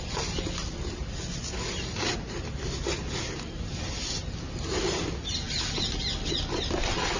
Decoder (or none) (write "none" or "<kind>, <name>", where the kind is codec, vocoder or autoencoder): none